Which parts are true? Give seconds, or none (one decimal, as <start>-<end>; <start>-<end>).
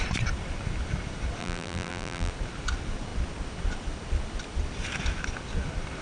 0.0-1.4; 2.3-6.0